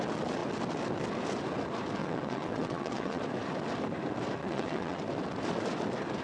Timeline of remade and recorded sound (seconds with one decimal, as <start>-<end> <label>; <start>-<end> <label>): 0.0-2.0 recorded; 2.0-3.2 remade; 3.2-4.4 recorded; 4.4-5.0 remade; 5.0-6.2 recorded